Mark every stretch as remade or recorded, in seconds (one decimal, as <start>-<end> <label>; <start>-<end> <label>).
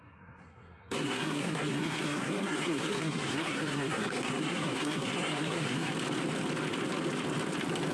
0.0-5.9 remade; 5.9-7.9 recorded